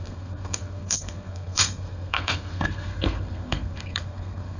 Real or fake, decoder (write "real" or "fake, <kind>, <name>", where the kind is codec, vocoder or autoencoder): fake, codec, SNAC